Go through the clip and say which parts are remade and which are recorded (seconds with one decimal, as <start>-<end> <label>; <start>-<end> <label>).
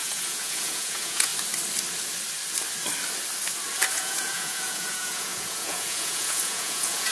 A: 0.0-1.3 remade; 1.3-3.9 recorded; 3.9-7.1 remade